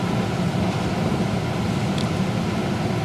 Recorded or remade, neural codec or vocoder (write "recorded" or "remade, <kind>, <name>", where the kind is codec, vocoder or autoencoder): recorded